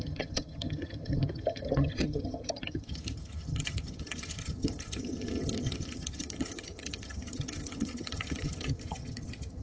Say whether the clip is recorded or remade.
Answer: remade